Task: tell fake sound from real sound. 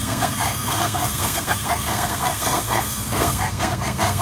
fake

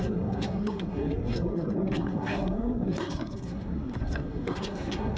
fake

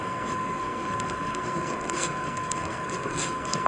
fake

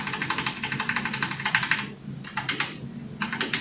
real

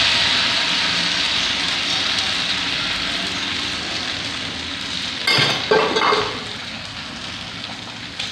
real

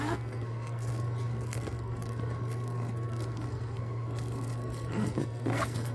fake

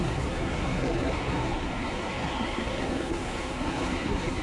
fake